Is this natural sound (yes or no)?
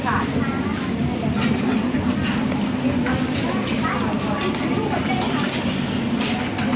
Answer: yes